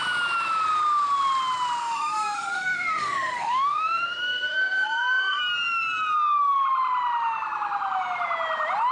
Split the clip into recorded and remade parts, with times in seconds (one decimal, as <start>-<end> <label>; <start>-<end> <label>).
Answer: 0.0-1.8 recorded; 1.8-5.4 remade; 5.4-8.9 recorded